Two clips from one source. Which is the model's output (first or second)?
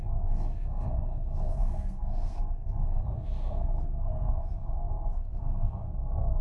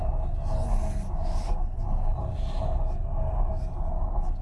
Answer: first